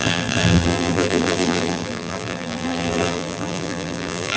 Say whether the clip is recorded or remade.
remade